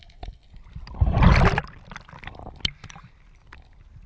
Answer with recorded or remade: recorded